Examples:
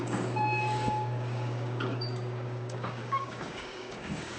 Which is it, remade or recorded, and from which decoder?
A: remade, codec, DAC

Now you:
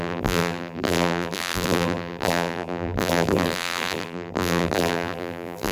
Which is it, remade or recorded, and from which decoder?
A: remade, vocoder, BigVGAN v2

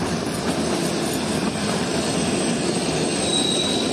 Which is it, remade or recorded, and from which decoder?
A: recorded